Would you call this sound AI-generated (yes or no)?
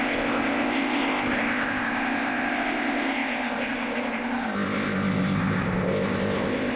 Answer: yes